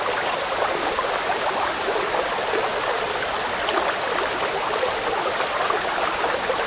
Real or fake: real